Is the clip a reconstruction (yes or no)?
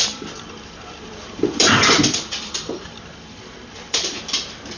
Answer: yes